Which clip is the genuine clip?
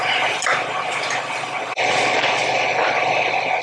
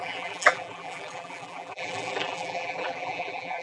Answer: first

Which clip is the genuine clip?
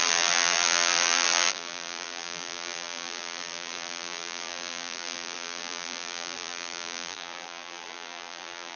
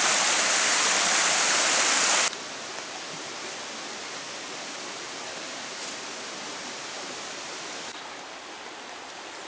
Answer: second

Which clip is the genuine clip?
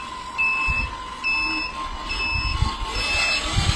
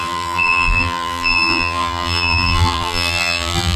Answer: first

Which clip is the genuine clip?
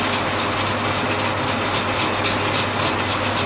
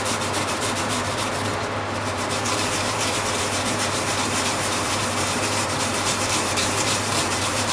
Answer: first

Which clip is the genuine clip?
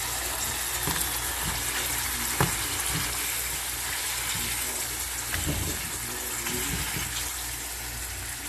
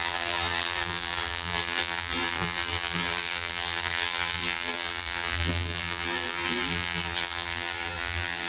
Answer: first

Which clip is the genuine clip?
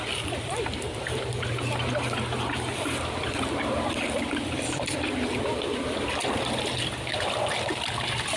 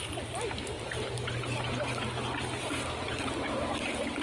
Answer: second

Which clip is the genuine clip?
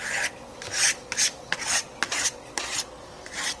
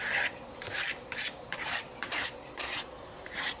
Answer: first